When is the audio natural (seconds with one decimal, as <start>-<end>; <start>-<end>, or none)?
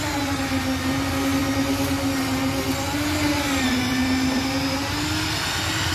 0.0-5.9